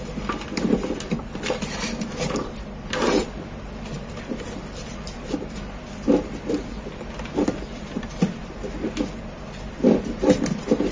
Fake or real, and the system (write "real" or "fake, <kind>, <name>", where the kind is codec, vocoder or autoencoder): fake, vocoder, BigVGAN v2